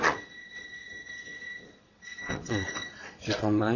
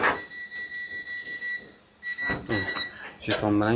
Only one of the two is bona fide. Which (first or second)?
second